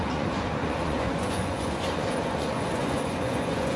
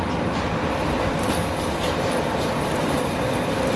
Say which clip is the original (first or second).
second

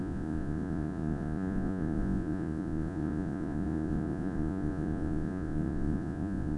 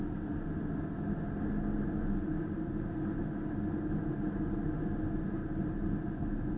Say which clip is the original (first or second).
second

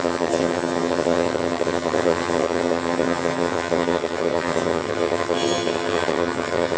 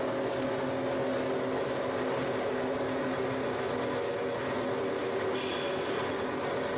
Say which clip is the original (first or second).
second